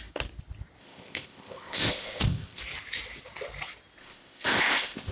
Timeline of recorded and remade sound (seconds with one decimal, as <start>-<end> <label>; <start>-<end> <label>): 0.0-0.8 recorded; 0.8-2.6 remade; 2.6-4.0 recorded; 4.0-5.1 remade